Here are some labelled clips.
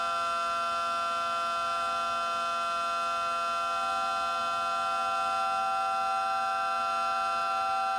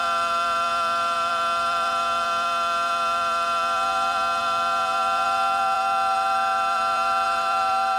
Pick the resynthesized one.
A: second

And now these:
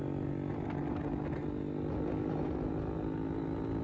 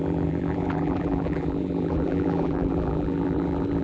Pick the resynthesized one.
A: second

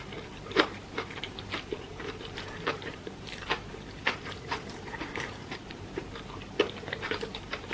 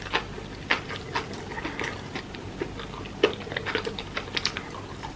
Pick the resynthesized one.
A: first